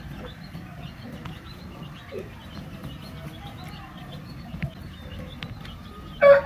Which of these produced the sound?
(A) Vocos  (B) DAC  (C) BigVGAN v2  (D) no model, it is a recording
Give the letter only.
D